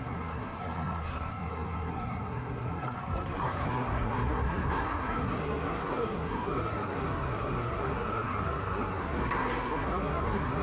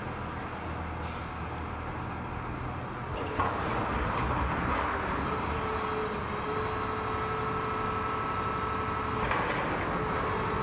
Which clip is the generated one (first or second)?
first